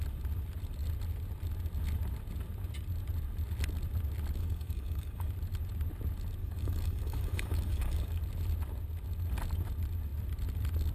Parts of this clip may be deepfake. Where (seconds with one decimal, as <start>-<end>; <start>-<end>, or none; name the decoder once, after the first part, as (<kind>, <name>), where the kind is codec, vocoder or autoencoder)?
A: 4.4-5.3 (codec, DAC); 6.4-8.2

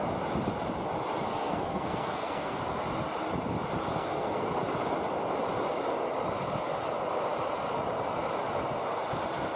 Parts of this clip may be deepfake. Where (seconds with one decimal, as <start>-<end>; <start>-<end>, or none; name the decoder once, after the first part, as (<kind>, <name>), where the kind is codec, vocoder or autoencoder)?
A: 1.3-2.6 (codec, SNAC); 3.9-4.5

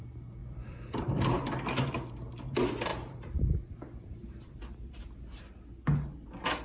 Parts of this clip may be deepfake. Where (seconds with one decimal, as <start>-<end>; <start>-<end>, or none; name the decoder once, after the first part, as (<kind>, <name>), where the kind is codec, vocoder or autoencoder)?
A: 0.4-1.5 (vocoder, BigVGAN v2); 2.9-5.4

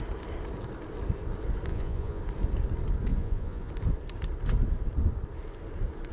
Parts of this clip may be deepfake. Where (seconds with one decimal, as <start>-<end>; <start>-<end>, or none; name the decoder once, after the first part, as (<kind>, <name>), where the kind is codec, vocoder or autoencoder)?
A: 1.7-2.2 (vocoder, Vocos); 3.1-3.7

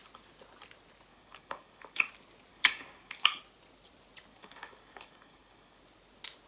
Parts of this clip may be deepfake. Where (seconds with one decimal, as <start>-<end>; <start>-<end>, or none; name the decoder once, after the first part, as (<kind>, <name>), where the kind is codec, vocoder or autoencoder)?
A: 1.1-2.1 (codec, DAC); 2.5-3.4; 4.3-5.8